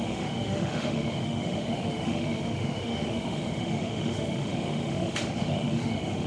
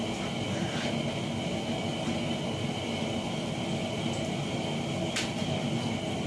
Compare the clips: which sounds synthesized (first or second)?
first